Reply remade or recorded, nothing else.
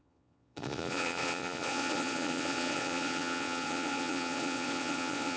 remade